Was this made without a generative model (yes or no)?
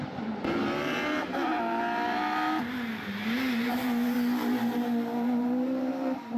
no